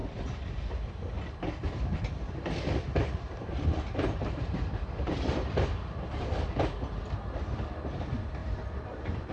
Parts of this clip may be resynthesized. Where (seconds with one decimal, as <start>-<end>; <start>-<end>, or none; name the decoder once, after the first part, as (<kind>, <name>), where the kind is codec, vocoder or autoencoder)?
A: 0.0-0.6 (vocoder, BigVGAN v2); 2.2-6.3; 8.4-9.3